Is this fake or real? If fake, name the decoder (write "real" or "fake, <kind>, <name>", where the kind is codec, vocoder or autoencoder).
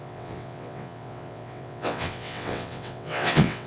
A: fake, vocoder, WaveNeXt